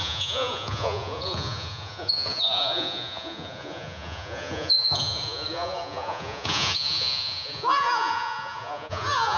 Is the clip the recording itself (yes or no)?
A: no